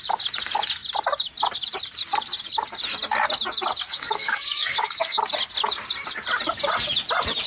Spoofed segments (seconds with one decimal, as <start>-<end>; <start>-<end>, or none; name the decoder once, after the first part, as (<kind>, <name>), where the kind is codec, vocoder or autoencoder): 3.9-5.2 (codec, DAC)

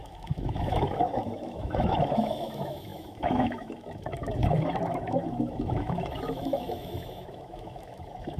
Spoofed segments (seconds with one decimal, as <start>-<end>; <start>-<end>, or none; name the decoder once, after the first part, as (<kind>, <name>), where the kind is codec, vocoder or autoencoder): 0.0-8.4 (autoencoder, DAC-VAE)